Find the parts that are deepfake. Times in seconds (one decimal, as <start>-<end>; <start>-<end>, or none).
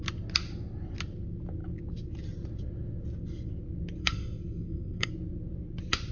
4.0-5.1